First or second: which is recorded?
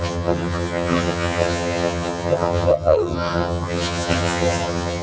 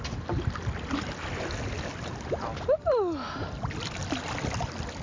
second